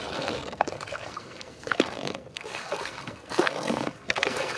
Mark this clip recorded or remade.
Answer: remade